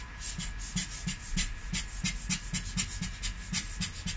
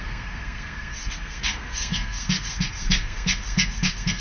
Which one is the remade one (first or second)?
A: second